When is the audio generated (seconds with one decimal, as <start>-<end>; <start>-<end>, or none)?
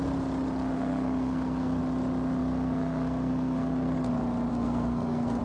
0.7-1.8; 2.4-4.1; 4.5-5.4